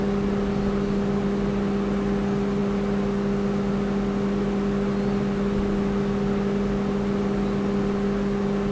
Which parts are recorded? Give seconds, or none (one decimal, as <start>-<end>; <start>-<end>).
0.0-8.7